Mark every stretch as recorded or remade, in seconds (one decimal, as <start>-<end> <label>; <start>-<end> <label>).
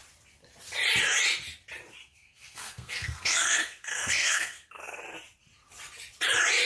0.0-2.0 recorded; 2.0-5.0 remade; 5.0-6.7 recorded